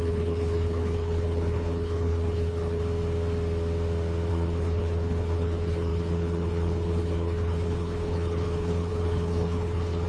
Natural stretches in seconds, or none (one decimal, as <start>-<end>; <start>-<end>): 2.8-4.3

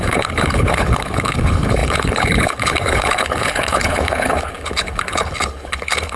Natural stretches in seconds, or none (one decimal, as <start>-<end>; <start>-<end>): none

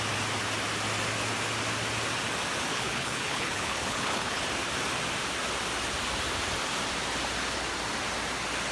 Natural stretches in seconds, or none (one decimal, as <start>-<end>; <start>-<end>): 0.0-2.7; 4.4-8.7

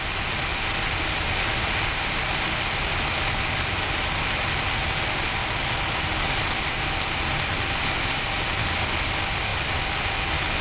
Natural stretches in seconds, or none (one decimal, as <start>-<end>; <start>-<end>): 0.0-10.6

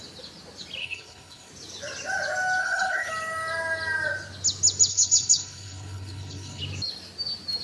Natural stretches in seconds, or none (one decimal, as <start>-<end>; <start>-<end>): 0.0-0.8; 1.5-2.6; 3.1-4.9; 6.6-7.6

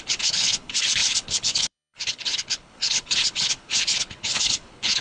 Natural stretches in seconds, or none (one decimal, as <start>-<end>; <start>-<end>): none

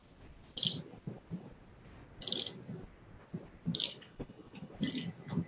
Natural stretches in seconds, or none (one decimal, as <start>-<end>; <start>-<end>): 0.0-3.9; 4.7-5.5

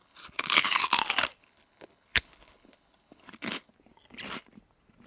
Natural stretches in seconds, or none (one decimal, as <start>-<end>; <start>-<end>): 0.8-1.4; 3.7-5.1